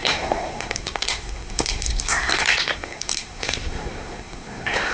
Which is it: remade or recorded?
remade